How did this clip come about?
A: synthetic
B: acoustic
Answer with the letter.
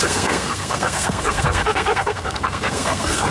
A